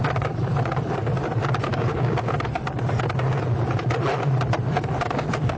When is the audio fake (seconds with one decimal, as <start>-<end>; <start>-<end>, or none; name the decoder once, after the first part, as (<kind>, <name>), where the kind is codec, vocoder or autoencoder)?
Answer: 1.7-2.3 (codec, DAC)